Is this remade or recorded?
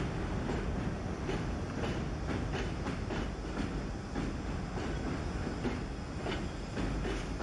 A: recorded